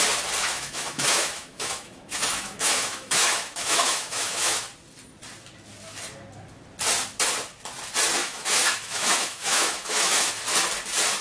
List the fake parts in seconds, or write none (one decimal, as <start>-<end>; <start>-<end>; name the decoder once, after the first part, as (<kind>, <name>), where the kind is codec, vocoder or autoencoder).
0.4-4.6 (autoencoder, DAC-VAE); 8.2-10.3